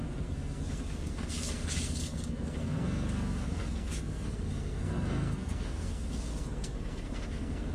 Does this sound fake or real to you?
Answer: fake